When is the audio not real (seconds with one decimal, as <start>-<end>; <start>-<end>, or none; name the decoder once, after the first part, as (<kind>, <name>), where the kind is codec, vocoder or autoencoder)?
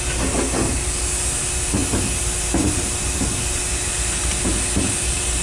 none